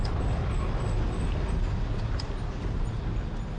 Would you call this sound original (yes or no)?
yes